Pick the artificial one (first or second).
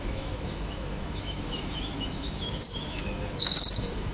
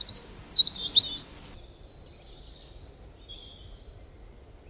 first